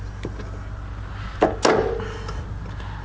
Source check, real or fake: real